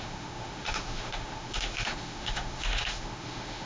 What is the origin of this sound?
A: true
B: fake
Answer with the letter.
B